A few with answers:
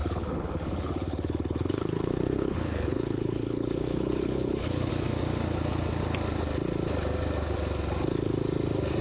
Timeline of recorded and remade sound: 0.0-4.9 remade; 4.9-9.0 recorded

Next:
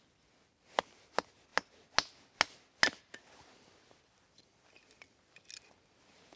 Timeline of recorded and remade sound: 0.0-6.4 recorded

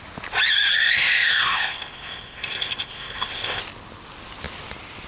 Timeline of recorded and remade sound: 0.0-0.7 recorded; 0.7-3.6 remade; 3.6-5.1 recorded

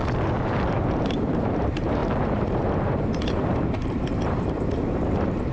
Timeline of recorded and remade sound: 0.0-0.5 recorded; 0.5-5.5 remade

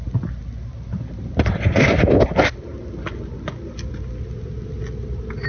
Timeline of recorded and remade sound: 0.0-5.5 recorded

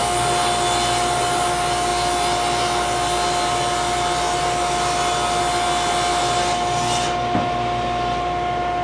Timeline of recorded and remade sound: 0.0-8.8 recorded

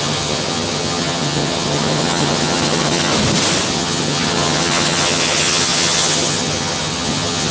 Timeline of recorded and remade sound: 0.0-3.1 remade; 3.1-3.7 recorded; 3.7-7.5 remade